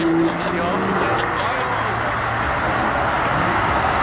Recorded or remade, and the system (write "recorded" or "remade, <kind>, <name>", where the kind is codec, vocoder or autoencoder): recorded